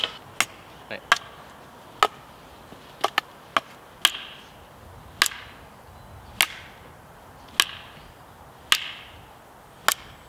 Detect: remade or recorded recorded